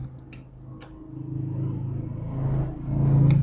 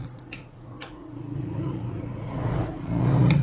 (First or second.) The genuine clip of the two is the first